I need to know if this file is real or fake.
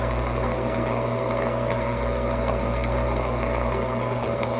fake